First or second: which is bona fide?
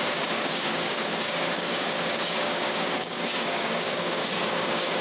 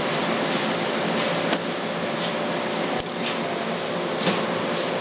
second